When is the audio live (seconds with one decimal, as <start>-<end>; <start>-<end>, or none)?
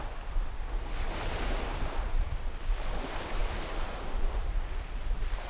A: 0.0-5.5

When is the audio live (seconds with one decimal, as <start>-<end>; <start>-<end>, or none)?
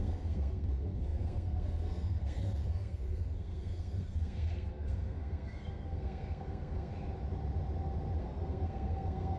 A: 6.9-8.2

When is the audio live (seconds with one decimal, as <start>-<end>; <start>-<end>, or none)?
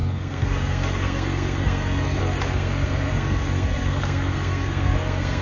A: none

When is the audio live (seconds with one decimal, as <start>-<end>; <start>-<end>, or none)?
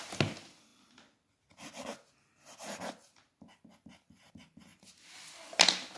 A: 0.0-6.0